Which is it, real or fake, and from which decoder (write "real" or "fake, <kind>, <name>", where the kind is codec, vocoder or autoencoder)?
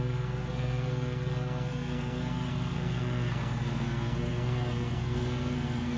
fake, codec, SNAC